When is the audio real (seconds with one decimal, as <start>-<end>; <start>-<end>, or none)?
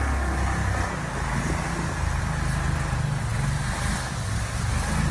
0.0-5.1